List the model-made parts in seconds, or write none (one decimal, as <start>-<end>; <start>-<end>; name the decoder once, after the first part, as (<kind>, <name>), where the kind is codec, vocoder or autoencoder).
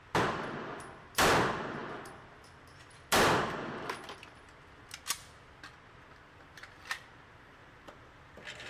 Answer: none